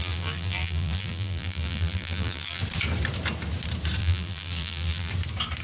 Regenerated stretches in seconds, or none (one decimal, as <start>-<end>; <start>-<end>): 0.0-2.6; 4.0-5.1